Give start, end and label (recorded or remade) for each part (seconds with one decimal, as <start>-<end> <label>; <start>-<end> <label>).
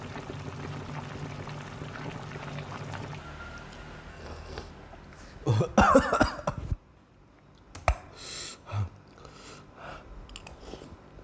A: 0.0-4.1 recorded; 4.1-4.7 remade; 4.7-11.2 recorded